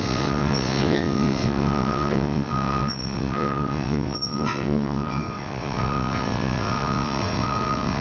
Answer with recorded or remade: remade